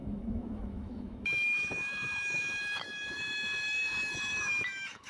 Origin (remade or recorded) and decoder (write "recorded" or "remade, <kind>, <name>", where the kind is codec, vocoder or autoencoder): remade, autoencoder, DAC-VAE